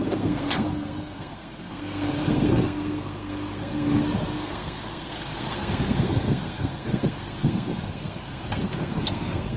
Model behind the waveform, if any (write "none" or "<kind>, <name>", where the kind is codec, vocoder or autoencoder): codec, SNAC